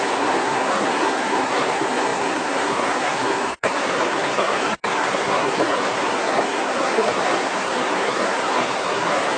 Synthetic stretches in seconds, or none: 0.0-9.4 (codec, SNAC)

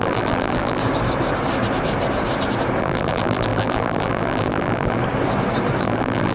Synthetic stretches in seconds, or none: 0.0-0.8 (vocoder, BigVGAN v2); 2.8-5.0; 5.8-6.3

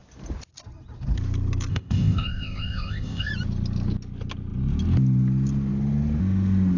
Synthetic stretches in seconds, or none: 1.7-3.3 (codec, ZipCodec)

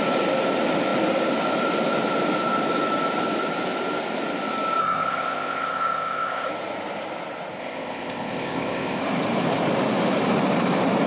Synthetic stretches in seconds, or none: 4.8-6.5 (codec, ZipCodec); 7.6-9.0

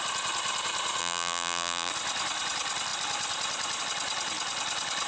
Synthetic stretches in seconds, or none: 1.0-1.9 (vocoder, BigVGAN v2)